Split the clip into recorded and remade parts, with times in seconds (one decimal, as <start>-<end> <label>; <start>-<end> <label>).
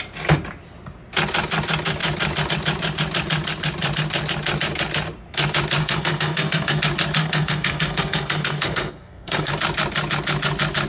0.0-5.8 recorded; 5.8-6.8 remade; 6.8-7.2 recorded; 7.2-9.5 remade; 9.5-10.9 recorded